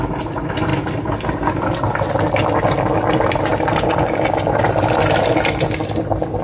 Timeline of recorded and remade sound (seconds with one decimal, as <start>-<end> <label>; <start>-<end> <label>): 0.0-6.4 recorded